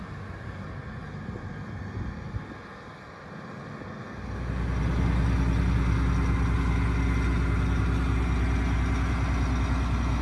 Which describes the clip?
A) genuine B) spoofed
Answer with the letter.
A